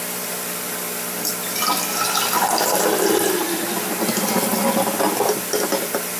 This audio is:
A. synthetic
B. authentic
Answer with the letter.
B